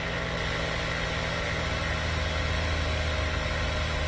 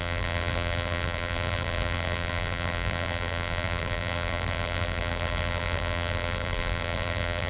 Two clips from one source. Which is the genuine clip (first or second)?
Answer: first